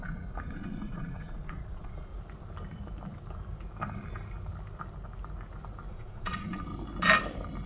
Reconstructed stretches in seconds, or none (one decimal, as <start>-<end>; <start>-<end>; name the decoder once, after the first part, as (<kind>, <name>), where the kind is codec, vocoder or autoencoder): 0.0-2.1 (vocoder, Vocos); 5.9-6.7